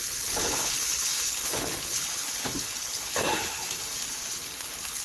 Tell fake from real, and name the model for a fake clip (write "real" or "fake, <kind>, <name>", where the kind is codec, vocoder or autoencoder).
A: fake, codec, HILCodec